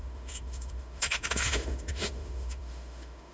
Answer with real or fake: fake